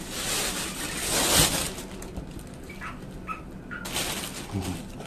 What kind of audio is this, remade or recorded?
recorded